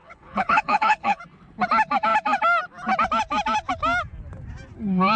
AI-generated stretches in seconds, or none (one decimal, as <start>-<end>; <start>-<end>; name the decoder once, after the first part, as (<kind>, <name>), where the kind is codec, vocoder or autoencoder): 0.0-1.2 (codec, HILCodec)